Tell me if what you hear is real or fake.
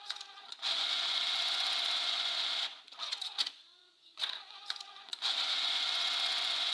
fake